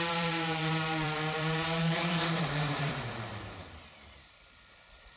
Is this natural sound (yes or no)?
no